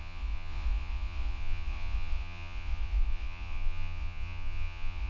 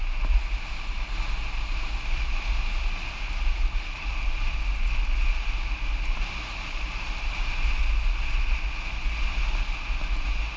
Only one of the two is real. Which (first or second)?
second